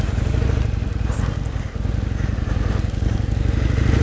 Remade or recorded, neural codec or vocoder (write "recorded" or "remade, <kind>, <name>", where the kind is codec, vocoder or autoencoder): recorded